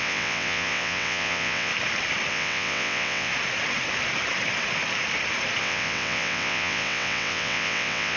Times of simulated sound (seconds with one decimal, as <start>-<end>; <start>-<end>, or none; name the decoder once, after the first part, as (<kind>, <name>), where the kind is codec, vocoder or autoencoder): 0.0-1.7 (vocoder, WaveNeXt); 2.3-3.3; 5.6-8.2